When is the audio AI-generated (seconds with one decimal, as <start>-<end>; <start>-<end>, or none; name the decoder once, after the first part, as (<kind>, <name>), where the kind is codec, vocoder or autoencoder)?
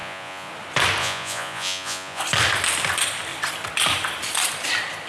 0.0-0.5 (vocoder, Vocos); 1.0-2.2